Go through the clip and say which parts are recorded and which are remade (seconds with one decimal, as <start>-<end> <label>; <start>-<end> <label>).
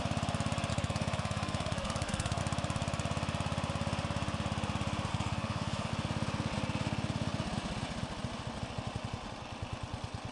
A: 0.0-0.7 recorded; 0.7-2.4 remade; 2.4-5.1 recorded; 5.1-5.9 remade; 5.9-10.3 recorded